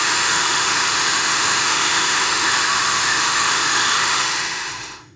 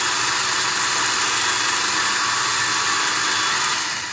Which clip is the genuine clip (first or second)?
second